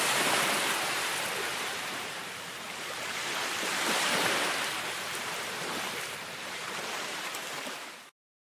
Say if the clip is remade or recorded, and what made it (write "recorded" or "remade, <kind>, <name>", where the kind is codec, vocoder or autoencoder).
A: remade, vocoder, BigVGAN v2